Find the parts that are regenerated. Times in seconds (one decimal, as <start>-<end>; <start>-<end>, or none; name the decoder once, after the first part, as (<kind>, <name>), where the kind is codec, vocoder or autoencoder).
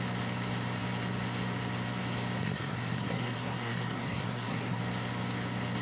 2.4-4.8 (codec, SNAC)